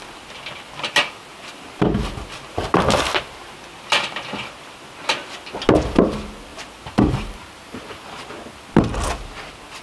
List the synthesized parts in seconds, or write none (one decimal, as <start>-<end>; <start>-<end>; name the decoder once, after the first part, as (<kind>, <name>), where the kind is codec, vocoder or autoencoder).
1.3-2.8 (vocoder, BigVGAN v2); 6.5-7.8